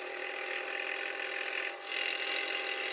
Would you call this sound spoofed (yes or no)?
no